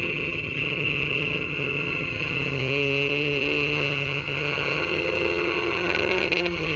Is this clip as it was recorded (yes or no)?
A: no